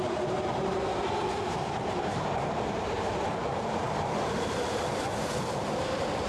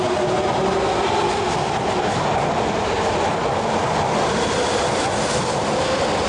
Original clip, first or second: second